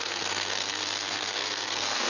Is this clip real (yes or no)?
no